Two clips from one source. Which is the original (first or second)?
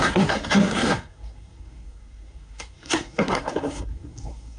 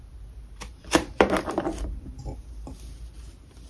second